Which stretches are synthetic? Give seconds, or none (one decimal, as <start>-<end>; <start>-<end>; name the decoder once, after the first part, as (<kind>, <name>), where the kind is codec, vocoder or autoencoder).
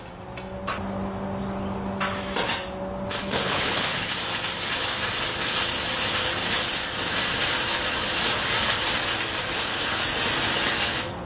3.2-4.1 (codec, HILCodec)